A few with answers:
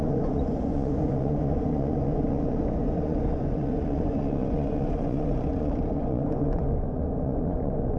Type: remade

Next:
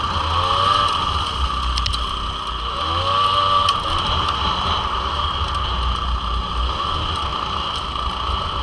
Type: recorded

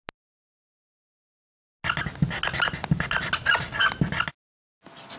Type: recorded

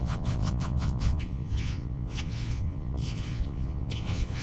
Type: remade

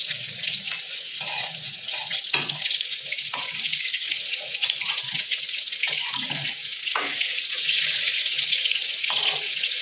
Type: remade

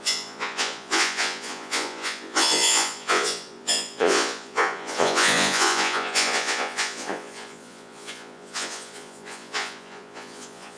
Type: remade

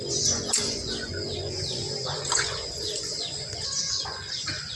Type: remade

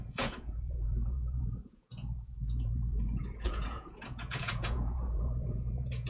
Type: remade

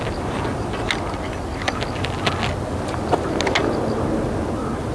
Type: recorded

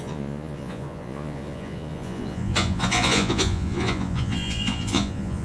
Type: remade